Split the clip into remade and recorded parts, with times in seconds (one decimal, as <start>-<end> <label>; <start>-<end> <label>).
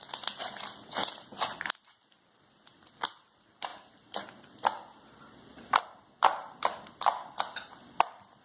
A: 0.0-8.4 recorded